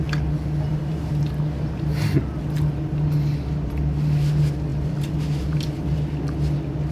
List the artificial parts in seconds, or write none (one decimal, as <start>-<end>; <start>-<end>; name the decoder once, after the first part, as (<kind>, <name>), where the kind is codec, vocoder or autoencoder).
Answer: 0.7-1.2 (vocoder, BigVGAN v2)